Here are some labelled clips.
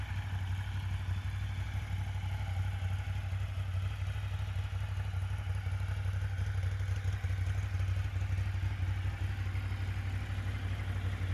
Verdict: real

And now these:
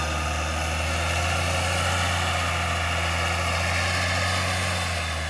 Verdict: real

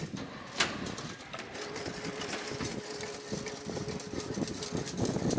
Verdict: real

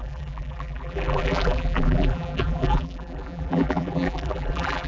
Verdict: fake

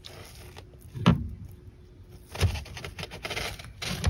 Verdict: real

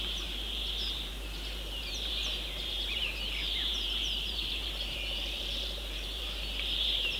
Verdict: fake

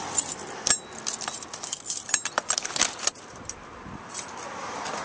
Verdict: fake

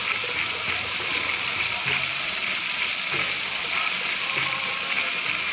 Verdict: fake